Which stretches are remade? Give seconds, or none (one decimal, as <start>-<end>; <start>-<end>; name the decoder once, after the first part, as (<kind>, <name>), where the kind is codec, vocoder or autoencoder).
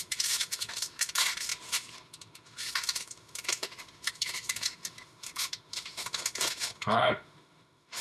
0.0-8.0 (autoencoder, DAC-VAE)